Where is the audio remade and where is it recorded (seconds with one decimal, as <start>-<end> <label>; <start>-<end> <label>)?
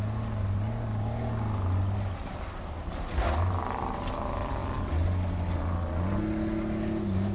0.0-7.3 recorded